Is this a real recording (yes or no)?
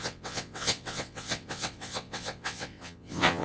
no